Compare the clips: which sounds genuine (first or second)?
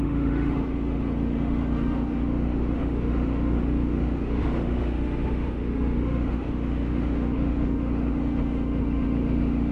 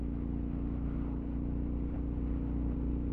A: second